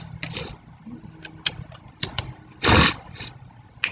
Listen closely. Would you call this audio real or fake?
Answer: real